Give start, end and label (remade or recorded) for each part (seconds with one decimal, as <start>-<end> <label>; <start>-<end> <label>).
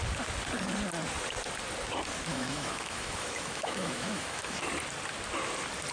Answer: 0.0-2.3 recorded; 2.3-4.7 remade; 4.7-5.9 recorded